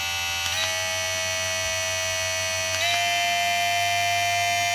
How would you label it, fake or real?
real